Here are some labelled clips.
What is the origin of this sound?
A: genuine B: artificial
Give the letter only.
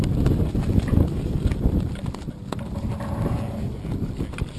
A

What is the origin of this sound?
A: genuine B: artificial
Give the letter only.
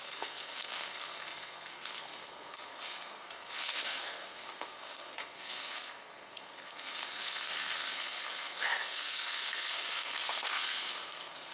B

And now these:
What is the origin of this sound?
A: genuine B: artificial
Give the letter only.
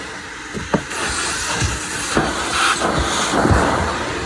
A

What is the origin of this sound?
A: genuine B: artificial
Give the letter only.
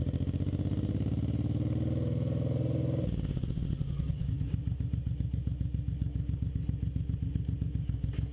A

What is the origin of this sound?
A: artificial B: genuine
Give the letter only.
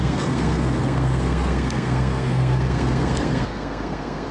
A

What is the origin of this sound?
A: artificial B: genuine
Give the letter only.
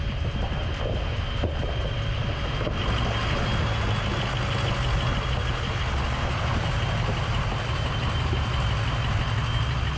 B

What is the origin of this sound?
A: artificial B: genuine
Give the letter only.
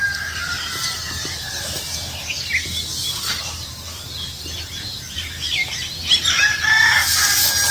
B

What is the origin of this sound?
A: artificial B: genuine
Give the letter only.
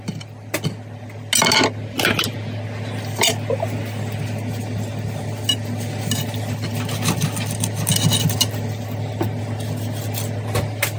B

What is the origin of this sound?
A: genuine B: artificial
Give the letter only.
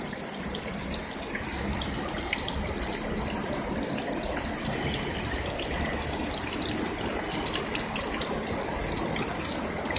A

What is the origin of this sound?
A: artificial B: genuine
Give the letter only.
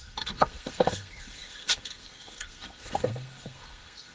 A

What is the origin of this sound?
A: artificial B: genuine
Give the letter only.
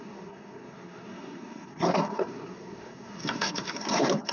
A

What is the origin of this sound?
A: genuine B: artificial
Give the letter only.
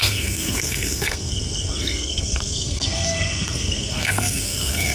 B